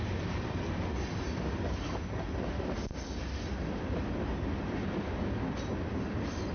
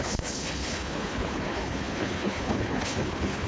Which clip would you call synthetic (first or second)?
second